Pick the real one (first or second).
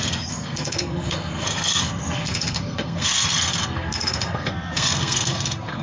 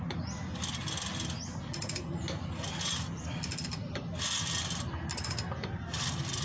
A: second